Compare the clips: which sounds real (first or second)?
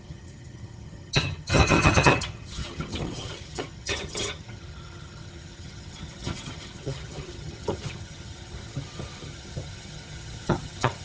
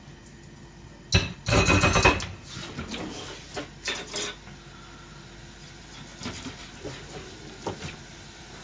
second